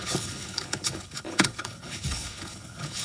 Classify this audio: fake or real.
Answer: fake